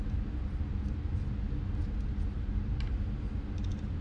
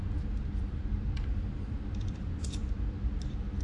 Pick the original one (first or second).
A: first